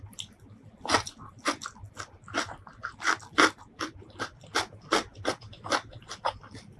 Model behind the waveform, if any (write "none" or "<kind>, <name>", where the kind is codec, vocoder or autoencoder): vocoder, BigVGAN v2